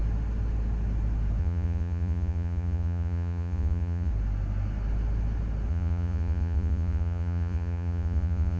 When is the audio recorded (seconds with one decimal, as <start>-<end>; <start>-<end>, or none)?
0.0-1.4; 4.1-5.7